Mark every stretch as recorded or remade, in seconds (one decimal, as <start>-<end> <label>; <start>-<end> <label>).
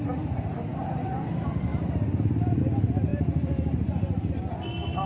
0.0-1.7 recorded; 1.7-2.6 remade; 2.6-3.1 recorded; 3.1-4.3 remade; 4.3-5.1 recorded